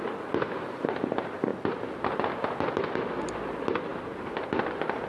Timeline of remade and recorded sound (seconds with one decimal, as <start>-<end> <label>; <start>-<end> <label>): 0.0-5.1 recorded